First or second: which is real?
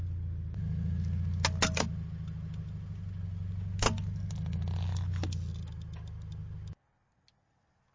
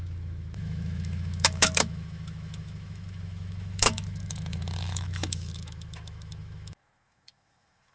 first